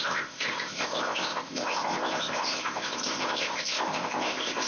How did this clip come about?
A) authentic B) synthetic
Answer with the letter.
B